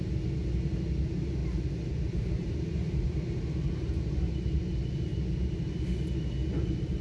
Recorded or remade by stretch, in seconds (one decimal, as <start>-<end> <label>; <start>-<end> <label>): 0.0-1.4 recorded; 1.4-4.1 remade; 4.1-5.1 recorded; 5.1-5.8 remade; 5.8-7.0 recorded